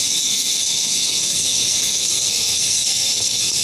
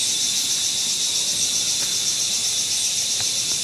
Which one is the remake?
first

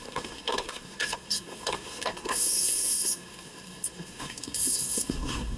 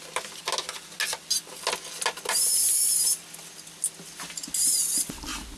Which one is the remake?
first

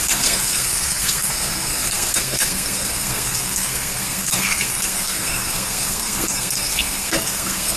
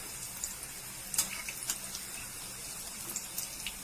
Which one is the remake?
first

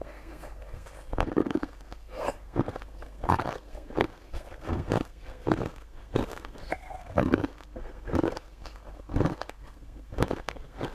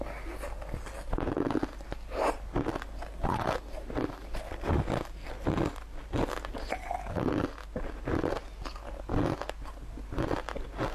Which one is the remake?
first